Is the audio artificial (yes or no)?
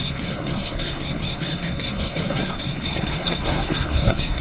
yes